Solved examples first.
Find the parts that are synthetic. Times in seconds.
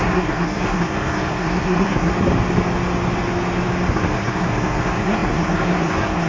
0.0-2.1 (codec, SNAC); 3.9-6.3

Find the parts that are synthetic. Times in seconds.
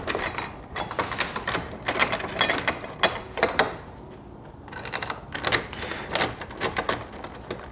none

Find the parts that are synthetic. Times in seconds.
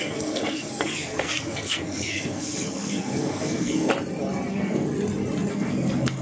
0.0-3.9 (codec, SNAC); 4.5-4.9; 5.5-6.2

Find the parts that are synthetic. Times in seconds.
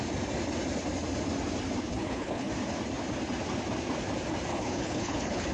1.9-2.5 (codec, HILCodec); 4.5-5.5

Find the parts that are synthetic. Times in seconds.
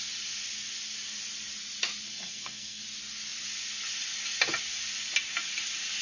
2.1-2.8 (codec, SNAC)